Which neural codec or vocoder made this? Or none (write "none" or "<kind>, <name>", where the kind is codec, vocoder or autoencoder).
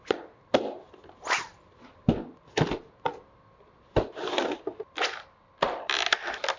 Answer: none